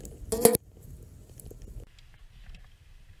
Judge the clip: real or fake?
real